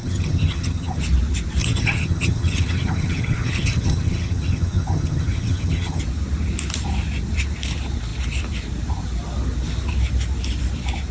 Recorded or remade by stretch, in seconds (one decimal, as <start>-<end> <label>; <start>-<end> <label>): 0.0-1.0 remade; 1.0-1.6 recorded; 1.6-6.0 remade; 6.0-11.1 recorded